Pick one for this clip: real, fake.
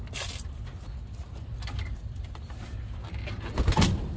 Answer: real